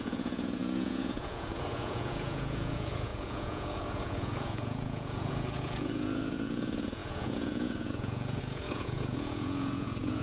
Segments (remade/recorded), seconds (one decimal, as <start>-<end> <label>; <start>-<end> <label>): 0.0-10.2 remade